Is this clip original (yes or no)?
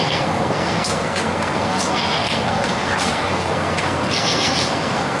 no